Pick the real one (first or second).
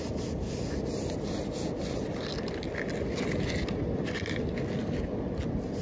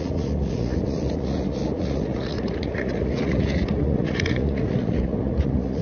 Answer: first